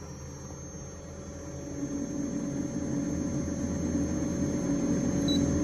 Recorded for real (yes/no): yes